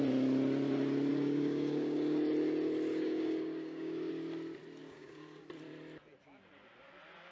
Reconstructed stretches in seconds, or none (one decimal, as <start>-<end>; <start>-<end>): 1.1-2.3; 2.9-4.1; 4.8-5.4